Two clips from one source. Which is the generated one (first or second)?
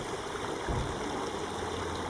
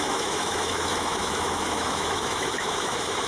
second